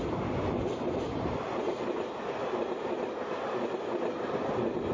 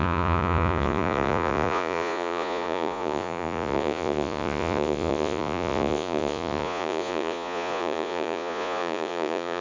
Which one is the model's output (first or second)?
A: second